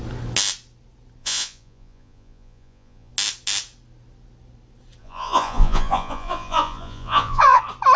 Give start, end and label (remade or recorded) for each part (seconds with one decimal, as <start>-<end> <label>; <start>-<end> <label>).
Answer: 0.0-1.2 recorded; 1.2-3.1 remade; 3.1-5.0 recorded; 5.0-7.6 remade; 7.6-8.0 recorded